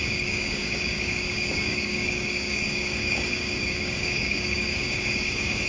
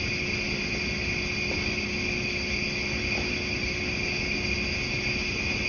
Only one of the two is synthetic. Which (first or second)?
first